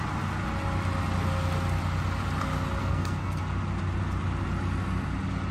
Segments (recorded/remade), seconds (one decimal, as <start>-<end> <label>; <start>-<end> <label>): 0.0-2.8 recorded; 2.8-3.4 remade; 3.4-5.5 recorded